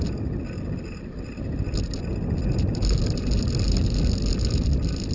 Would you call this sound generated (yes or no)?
no